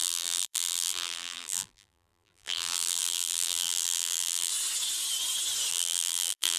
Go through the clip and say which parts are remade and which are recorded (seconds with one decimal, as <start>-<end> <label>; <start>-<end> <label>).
0.0-4.5 remade; 4.5-5.7 recorded; 5.7-6.6 remade